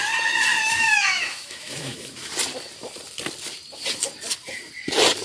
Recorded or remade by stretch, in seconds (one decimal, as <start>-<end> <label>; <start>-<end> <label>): 0.0-0.5 recorded; 0.5-2.3 remade; 2.3-5.2 recorded